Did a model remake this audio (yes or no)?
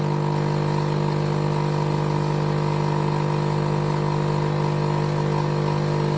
no